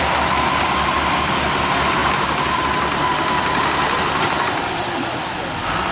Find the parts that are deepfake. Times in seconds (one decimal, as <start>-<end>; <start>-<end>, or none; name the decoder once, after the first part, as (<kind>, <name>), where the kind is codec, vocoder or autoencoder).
0.0-5.9 (vocoder, BigVGAN v2)